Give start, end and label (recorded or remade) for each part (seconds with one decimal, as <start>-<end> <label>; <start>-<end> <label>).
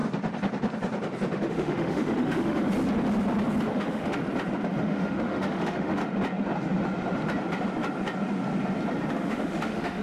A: 0.0-1.5 recorded; 1.5-2.7 remade; 2.7-3.7 recorded; 3.7-4.2 remade; 4.2-4.8 recorded; 4.8-6.0 remade; 6.0-9.1 recorded; 9.1-10.0 remade